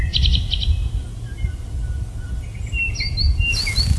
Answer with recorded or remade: recorded